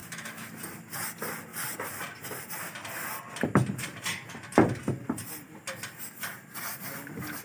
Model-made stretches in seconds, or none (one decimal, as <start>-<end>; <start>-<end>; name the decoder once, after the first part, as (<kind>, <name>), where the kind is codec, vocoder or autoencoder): 0.0-0.6 (autoencoder, DAC-VAE)